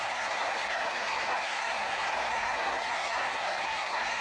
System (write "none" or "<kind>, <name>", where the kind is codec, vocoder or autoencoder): codec, SNAC